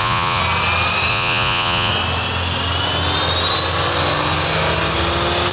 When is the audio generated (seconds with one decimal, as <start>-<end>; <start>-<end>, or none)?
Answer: 0.0-0.4; 1.1-1.9